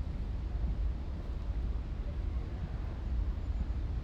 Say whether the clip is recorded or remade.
recorded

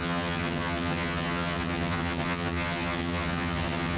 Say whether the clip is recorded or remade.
remade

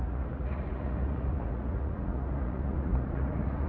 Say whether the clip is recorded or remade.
remade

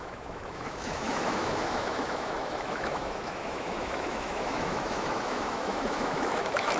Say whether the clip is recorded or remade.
remade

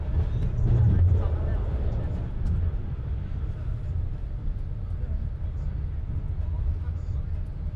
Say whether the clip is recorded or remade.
recorded